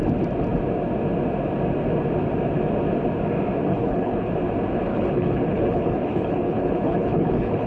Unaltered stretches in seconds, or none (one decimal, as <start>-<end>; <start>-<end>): 0.0-3.7; 4.3-4.9